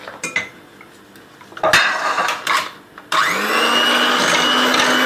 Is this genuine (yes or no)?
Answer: yes